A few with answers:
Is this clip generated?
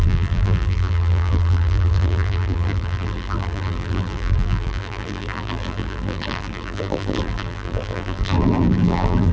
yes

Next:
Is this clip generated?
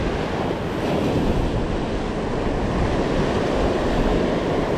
no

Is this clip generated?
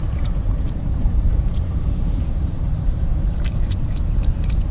yes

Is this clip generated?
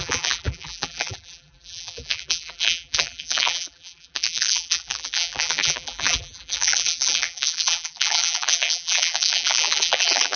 yes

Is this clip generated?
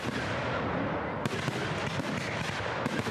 no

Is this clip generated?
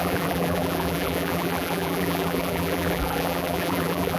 yes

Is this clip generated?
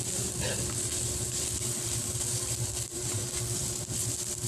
yes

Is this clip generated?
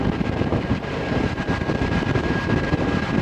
yes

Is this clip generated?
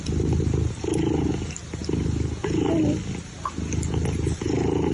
no